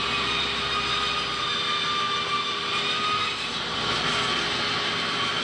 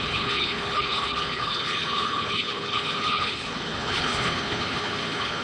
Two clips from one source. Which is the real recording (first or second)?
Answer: first